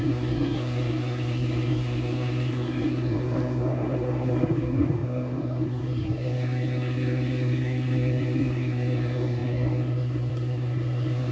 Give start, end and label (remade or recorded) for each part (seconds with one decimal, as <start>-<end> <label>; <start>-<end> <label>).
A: 0.0-11.3 remade